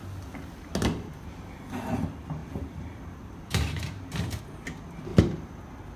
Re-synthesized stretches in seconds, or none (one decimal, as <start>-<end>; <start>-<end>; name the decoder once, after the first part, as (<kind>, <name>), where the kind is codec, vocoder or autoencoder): 2.4-4.4 (vocoder, BigVGAN v2); 5.1-5.6